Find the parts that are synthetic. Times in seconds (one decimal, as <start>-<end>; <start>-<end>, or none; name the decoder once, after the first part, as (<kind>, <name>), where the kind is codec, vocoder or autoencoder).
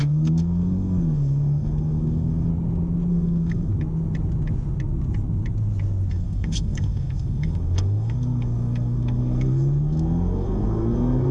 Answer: 0.0-2.5 (codec, SNAC); 3.1-3.7; 6.1-11.3